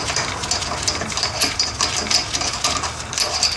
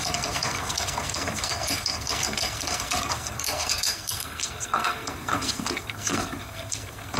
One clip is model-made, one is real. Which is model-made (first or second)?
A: second